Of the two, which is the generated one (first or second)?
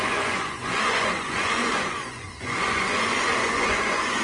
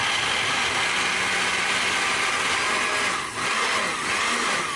first